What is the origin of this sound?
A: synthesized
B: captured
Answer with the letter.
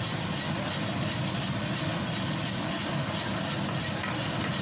B